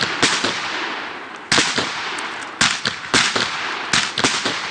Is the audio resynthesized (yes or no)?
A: no